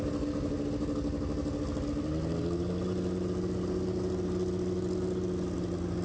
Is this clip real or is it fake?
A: real